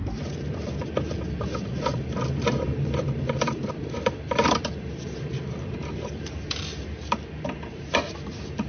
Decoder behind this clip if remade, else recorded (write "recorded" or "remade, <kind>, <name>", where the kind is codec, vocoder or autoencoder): remade, vocoder, BigVGAN v2